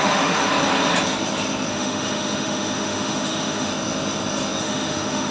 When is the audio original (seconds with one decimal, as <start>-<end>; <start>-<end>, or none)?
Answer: 0.4-1.7; 3.7-4.6